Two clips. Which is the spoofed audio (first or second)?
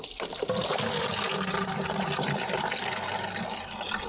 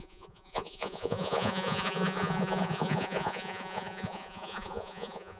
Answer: second